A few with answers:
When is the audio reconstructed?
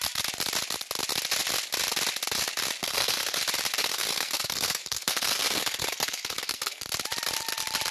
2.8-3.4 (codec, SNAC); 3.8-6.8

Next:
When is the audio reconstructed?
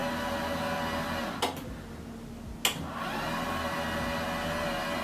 none